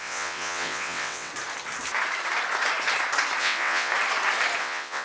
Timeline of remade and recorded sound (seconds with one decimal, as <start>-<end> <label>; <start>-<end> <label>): 0.0-1.3 remade; 1.3-3.4 recorded; 3.4-3.9 remade; 3.9-4.6 recorded; 4.6-5.0 remade

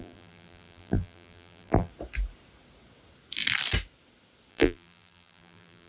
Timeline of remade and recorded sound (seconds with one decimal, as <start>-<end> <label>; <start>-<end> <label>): 0.0-1.9 remade; 1.9-4.5 recorded; 4.5-5.9 remade

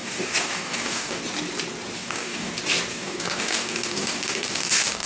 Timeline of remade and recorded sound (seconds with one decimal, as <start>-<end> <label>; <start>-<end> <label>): 0.0-1.2 remade; 1.2-2.0 recorded; 2.0-2.5 remade; 2.5-2.9 recorded; 2.9-5.1 remade

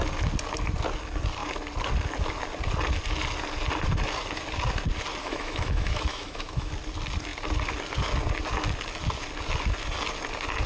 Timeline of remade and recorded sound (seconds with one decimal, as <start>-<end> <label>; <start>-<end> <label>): 0.0-5.2 recorded; 5.2-6.7 remade; 6.7-10.7 recorded

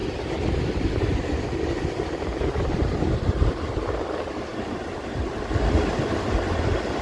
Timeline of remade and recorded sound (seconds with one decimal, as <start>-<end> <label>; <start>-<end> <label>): 0.0-7.0 remade

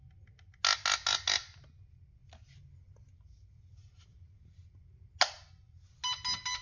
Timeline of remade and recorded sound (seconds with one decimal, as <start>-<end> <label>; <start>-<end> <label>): 0.0-6.6 recorded